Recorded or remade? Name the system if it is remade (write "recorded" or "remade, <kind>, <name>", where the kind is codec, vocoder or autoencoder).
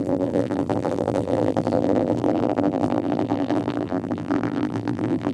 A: remade, vocoder, BigVGAN v2